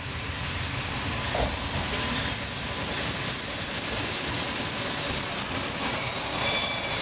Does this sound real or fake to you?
real